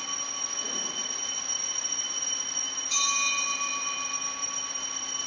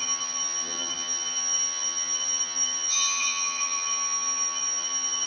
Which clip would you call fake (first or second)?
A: second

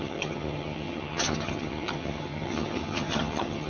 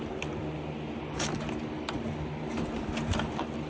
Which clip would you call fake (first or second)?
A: first